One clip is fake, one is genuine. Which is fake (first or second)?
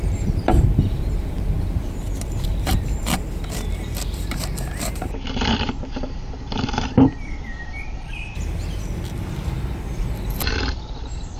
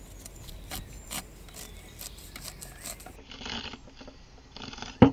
first